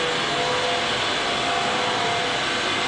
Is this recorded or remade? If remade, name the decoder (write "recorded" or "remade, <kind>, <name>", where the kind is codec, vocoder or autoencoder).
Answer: recorded